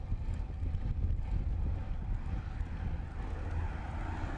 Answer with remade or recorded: recorded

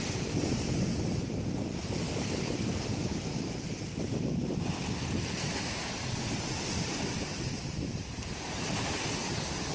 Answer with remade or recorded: recorded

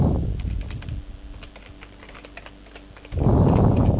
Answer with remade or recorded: recorded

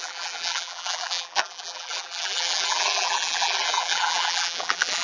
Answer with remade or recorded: remade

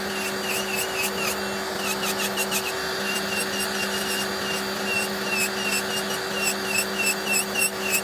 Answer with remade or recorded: recorded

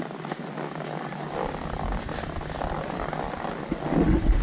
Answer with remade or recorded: recorded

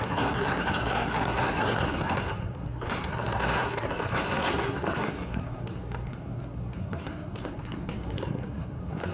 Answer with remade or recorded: remade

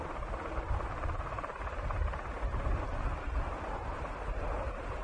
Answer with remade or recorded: recorded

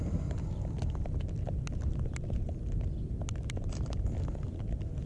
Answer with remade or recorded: recorded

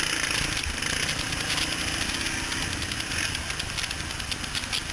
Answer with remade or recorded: recorded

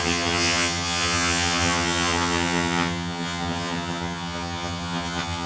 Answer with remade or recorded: remade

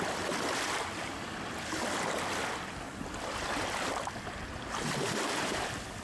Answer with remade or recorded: recorded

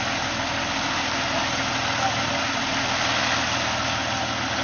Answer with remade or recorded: recorded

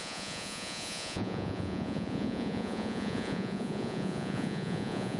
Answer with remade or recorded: remade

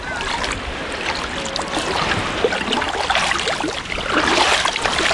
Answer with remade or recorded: recorded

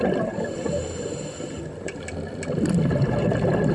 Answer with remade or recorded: recorded